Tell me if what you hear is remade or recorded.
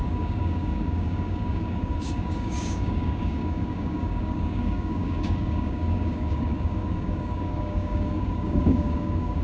remade